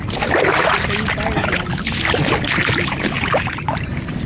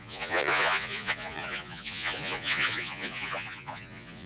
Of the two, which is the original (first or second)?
first